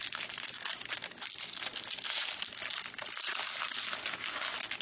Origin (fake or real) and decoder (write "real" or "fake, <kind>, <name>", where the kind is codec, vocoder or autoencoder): real